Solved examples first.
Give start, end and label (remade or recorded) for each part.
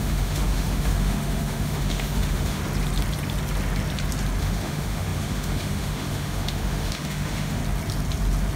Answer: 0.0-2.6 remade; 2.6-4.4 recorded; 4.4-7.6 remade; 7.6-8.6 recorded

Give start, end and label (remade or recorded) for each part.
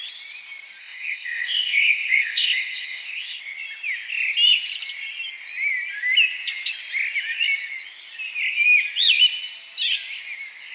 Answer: 0.0-0.8 recorded; 0.8-3.4 remade; 3.4-10.7 recorded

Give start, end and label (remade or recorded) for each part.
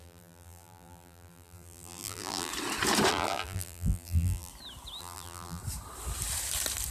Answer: 0.0-2.5 remade; 2.5-3.1 recorded; 3.1-4.5 remade; 4.5-5.0 recorded; 5.0-5.6 remade; 5.6-6.9 recorded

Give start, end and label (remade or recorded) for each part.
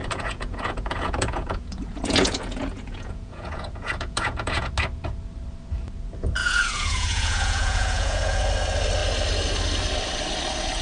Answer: 0.0-4.7 remade; 4.7-6.4 recorded; 6.4-8.4 remade; 8.4-10.8 recorded